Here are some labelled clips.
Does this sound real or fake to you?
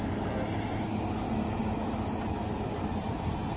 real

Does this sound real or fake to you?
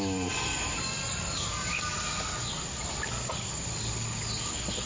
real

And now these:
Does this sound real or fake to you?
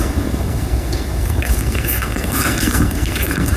fake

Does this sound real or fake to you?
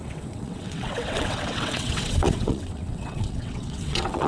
fake